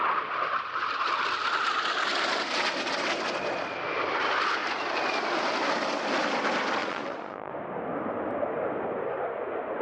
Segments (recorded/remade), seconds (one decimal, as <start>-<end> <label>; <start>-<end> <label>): 0.0-6.8 recorded; 6.8-7.5 remade; 7.5-9.8 recorded